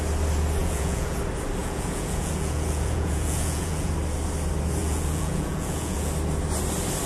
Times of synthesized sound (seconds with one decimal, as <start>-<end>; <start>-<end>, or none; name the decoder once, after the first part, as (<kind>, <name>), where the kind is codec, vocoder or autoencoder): 0.6-1.2 (vocoder, Vocos); 1.6-3.9; 4.8-6.1